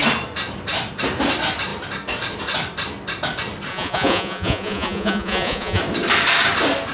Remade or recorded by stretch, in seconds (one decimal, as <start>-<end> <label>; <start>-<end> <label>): 0.0-3.7 recorded; 3.7-5.8 remade; 5.8-6.9 recorded